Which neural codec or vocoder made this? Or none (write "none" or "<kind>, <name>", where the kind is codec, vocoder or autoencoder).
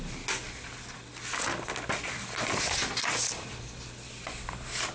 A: none